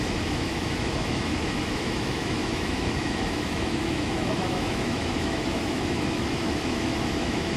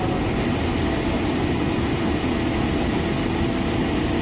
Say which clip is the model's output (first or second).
first